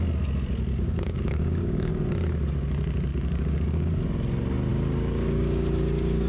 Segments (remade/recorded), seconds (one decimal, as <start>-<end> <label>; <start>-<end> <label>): 0.0-0.7 recorded; 0.7-1.9 remade; 1.9-3.1 recorded; 3.1-4.0 remade; 4.0-4.7 recorded; 4.7-6.3 remade